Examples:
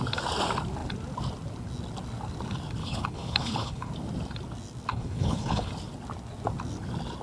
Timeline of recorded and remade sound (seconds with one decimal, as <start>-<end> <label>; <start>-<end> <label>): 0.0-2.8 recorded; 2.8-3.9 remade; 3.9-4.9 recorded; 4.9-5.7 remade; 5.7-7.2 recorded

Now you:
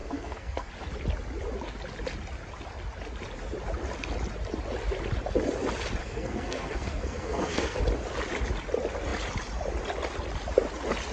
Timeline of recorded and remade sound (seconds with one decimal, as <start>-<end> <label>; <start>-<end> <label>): 0.0-0.7 remade; 0.7-6.0 recorded; 6.0-7.8 remade; 7.8-11.1 recorded

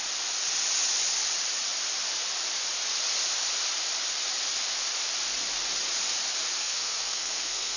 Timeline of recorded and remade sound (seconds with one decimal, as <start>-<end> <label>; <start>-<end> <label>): 0.0-6.6 recorded; 6.6-7.8 remade